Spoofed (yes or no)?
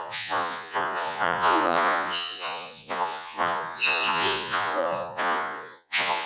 yes